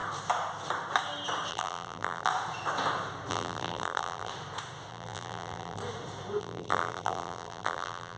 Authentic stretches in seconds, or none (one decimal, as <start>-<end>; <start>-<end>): 0.0-1.5; 2.3-3.3; 4.3-4.9; 5.8-6.4